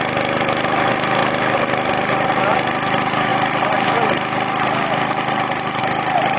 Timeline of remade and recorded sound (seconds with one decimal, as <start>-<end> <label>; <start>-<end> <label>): 0.0-5.8 recorded; 5.8-6.4 remade